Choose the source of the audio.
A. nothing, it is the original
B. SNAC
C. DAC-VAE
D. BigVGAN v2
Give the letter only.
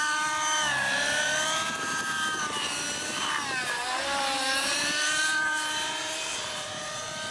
D